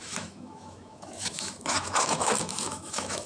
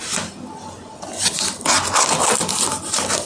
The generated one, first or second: first